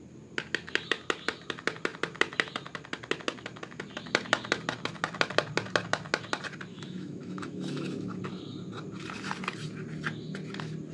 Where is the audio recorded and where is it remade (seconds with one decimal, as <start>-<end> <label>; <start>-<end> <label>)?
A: 0.0-6.7 recorded; 6.7-8.2 remade; 8.2-10.9 recorded